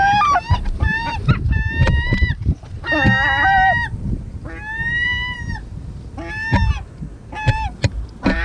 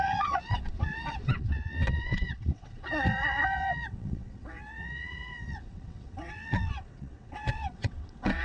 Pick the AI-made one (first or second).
second